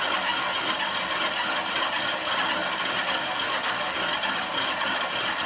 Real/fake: real